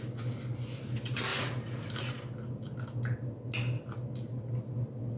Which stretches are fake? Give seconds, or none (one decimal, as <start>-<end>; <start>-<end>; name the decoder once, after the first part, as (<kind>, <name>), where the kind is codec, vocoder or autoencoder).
none